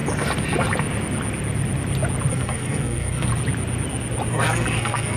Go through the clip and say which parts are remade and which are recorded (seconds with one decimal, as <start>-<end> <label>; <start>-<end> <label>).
0.0-2.3 recorded; 2.3-3.3 remade; 3.3-4.3 recorded; 4.3-5.2 remade